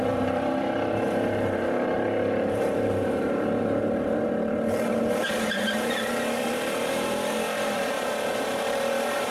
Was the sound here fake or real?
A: fake